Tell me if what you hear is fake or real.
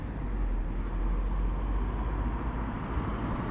real